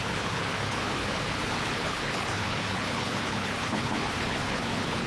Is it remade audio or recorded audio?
remade